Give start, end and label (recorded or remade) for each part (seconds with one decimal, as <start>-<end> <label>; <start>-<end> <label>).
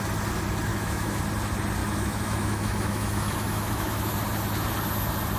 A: 0.0-0.7 recorded; 0.7-1.2 remade; 1.2-1.8 recorded; 1.8-4.1 remade; 4.1-5.4 recorded